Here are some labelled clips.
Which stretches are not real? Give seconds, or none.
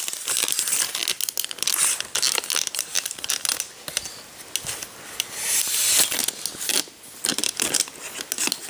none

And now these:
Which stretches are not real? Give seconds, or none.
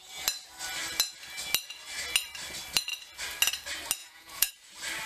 4.0-4.5 (vocoder, Vocos)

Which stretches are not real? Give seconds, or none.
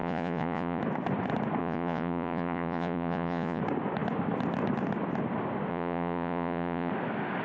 0.0-0.8 (vocoder, Vocos); 1.6-3.6; 5.7-6.9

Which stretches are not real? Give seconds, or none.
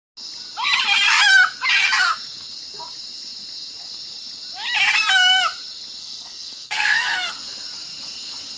6.0-7.3 (codec, SNAC)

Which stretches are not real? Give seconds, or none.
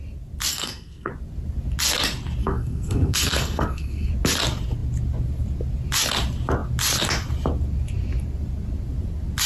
0.5-1.1 (codec, SNAC); 2.4-4.1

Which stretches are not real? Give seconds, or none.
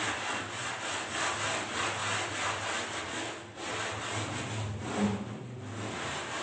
none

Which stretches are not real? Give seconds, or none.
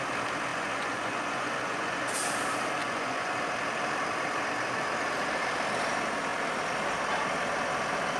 0.5-2.1 (vocoder, Vocos); 2.8-3.3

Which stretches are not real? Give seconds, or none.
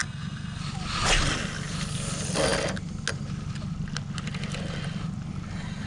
0.0-0.6 (codec, SNAC)